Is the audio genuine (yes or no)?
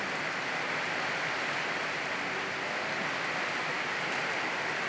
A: yes